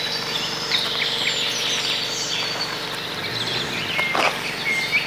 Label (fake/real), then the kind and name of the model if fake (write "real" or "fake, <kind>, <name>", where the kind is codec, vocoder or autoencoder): real